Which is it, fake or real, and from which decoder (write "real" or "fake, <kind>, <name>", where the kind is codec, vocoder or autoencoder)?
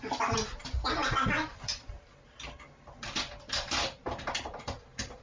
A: real